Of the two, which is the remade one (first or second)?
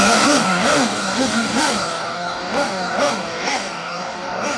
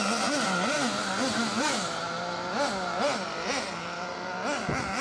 first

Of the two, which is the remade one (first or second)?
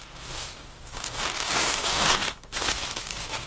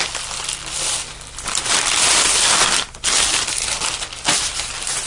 first